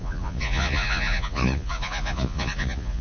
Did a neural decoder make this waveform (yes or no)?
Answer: yes